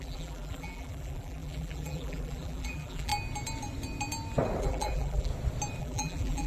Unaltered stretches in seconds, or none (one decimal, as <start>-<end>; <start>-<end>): 3.1-4.6; 5.3-5.8